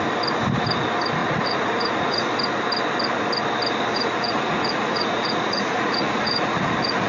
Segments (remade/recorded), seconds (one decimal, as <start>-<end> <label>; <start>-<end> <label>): 0.0-1.2 recorded; 1.2-2.3 remade; 2.3-3.9 recorded; 3.9-7.1 remade